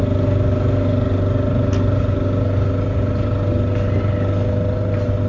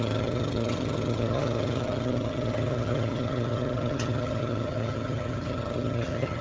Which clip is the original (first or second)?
first